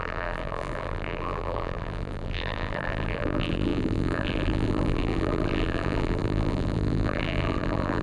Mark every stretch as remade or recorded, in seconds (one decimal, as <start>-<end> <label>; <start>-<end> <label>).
0.0-8.0 remade